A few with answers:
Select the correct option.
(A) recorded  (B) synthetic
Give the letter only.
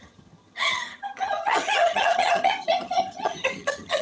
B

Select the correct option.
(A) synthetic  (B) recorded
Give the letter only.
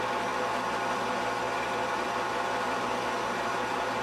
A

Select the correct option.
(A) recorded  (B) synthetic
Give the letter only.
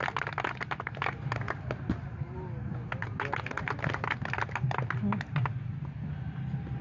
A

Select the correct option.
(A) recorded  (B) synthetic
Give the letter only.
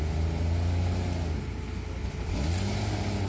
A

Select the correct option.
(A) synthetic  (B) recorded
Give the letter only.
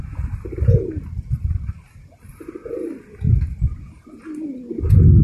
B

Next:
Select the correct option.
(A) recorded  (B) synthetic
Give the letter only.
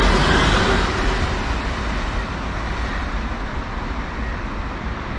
A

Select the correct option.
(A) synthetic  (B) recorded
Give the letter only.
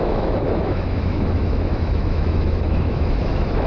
A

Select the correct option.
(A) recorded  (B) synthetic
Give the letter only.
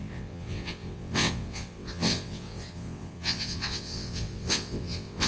B